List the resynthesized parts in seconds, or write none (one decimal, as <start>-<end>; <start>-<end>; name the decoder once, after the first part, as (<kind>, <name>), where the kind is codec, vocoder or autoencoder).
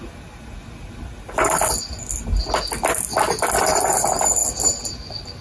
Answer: none